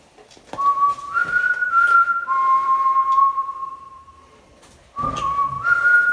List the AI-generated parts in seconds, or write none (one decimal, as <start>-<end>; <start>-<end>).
1.6-2.2; 3.6-4.4

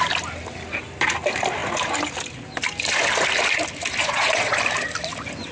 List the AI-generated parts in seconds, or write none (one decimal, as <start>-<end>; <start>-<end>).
4.0-4.6